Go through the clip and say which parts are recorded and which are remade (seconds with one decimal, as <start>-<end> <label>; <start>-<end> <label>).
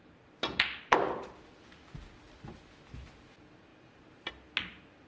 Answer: 0.0-3.7 recorded; 3.7-4.3 remade; 4.3-5.1 recorded